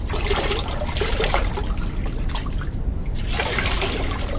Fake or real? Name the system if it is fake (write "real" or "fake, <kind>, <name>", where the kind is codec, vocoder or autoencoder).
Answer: real